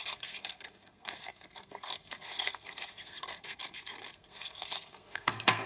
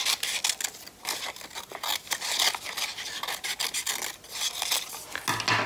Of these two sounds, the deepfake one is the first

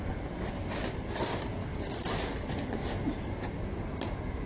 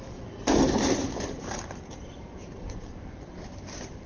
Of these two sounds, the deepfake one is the second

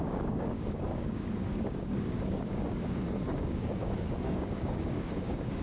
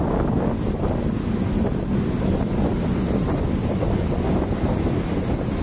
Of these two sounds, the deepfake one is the first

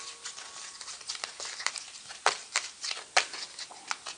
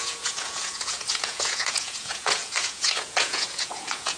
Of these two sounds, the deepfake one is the second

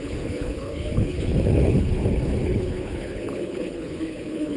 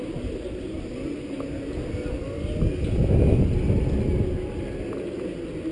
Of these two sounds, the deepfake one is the first